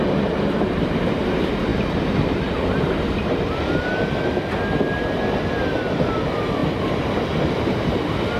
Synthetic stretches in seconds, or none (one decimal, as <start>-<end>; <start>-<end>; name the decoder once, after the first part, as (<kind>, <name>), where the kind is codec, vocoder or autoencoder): none